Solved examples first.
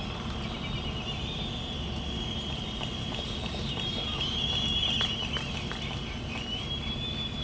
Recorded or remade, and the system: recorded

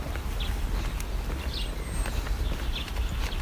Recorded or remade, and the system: recorded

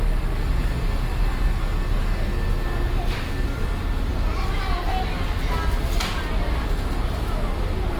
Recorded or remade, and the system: recorded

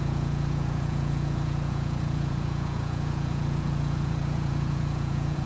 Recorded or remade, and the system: remade, vocoder, Vocos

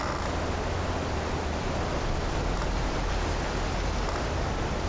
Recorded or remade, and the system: recorded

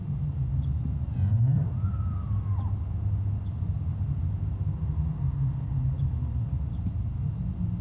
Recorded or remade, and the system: recorded